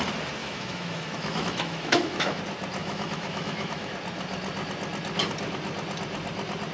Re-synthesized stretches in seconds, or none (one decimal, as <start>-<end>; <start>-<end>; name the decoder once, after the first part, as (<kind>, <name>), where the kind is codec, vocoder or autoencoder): 0.4-2.4 (autoencoder, DAC-VAE); 2.8-3.9